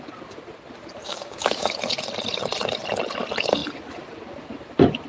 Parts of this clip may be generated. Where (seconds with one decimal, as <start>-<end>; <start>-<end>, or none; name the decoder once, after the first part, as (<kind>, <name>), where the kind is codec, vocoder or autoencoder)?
1.0-1.7 (codec, DAC)

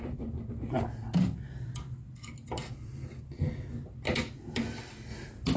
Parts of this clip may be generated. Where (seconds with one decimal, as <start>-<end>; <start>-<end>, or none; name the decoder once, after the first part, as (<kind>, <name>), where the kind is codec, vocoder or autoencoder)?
none

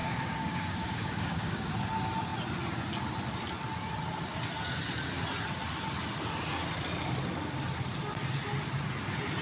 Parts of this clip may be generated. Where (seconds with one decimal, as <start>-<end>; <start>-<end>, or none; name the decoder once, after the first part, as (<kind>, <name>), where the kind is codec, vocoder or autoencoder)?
0.0-1.7 (codec, DAC)

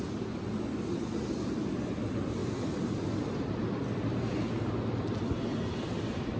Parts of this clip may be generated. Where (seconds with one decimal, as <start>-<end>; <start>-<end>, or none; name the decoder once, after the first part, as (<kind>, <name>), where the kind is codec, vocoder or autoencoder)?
none

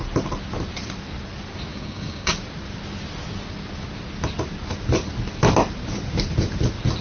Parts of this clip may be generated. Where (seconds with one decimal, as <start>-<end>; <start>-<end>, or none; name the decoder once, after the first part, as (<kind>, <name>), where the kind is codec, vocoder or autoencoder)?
1.7-2.3 (codec, DAC)

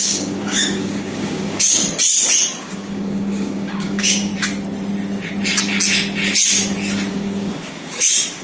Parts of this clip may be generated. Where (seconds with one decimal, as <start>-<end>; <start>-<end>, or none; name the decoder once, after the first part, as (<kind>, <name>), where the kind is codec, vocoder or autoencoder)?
0.0-1.8 (codec, DAC); 2.6-4.3; 7.1-8.4

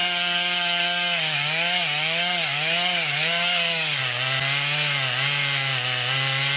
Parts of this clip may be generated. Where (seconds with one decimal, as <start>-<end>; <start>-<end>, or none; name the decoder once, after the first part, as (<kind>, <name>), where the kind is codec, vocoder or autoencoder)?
0.0-4.0 (codec, DAC)

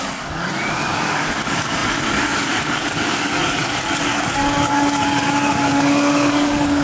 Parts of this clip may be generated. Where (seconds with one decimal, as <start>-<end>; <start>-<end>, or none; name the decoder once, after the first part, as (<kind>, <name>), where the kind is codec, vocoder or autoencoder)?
0.0-6.8 (codec, DAC)